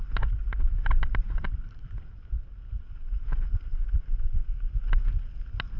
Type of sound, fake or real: real